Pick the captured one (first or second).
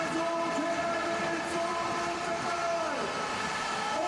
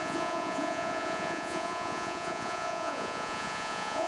first